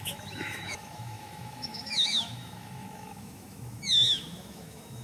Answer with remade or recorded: remade